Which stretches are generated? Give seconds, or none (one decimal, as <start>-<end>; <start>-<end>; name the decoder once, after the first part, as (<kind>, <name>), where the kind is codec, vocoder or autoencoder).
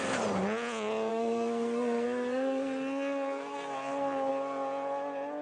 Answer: 1.1-4.3 (codec, SNAC)